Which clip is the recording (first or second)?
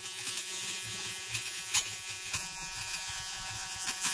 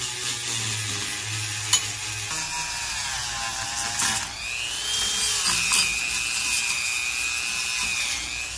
second